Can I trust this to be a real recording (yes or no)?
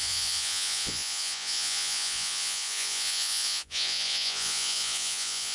no